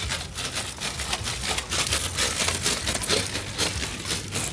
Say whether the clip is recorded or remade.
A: recorded